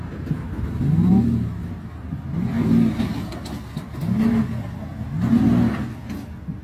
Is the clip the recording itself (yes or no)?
yes